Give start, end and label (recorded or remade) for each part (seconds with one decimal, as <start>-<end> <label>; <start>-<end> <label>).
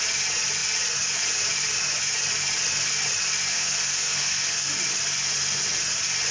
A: 0.0-3.5 recorded; 3.5-4.7 remade; 4.7-6.3 recorded